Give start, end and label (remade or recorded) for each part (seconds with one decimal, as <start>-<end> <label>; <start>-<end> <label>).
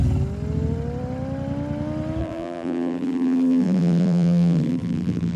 0.0-2.2 recorded; 2.2-5.4 remade